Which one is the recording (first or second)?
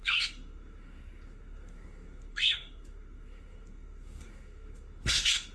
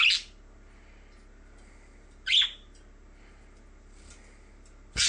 second